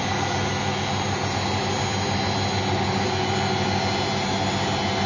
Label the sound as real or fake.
real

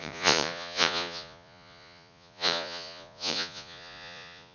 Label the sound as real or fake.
fake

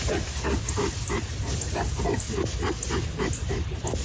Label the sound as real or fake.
real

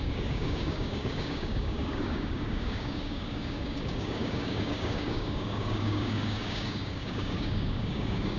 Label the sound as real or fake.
fake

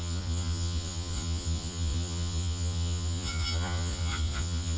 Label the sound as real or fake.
fake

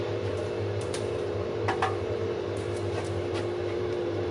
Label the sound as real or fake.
fake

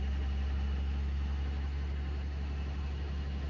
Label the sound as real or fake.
real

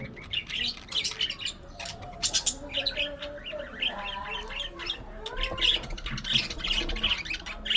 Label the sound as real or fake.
real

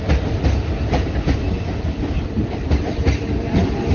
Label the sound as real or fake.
real